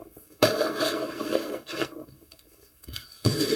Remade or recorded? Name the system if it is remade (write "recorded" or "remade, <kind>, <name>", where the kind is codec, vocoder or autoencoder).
remade, codec, SNAC